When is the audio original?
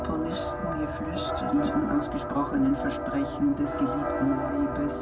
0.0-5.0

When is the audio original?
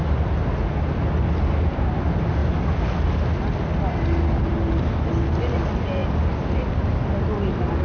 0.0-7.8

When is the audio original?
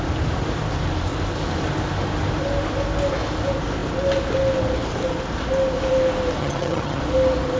0.0-6.4; 7.0-7.6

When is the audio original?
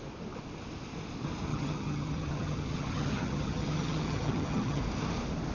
0.0-1.5; 4.8-5.5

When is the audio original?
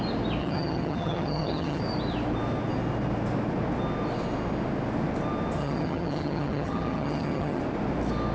0.0-0.4; 1.8-5.6; 7.6-8.3